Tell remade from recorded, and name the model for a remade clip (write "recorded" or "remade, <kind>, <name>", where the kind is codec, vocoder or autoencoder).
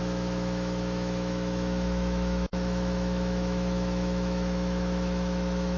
remade, autoencoder, DAC-VAE